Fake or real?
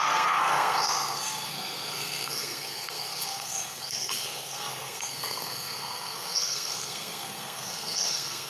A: fake